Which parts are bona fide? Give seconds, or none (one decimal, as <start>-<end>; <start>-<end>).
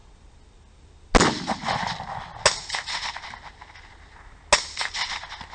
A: 0.0-5.5